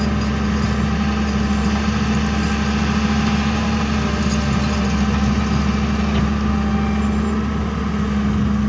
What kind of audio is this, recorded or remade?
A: recorded